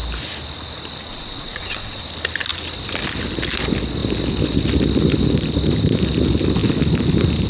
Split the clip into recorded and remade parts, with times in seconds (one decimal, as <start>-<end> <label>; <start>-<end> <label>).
0.0-1.1 recorded; 1.1-2.0 remade; 2.0-7.5 recorded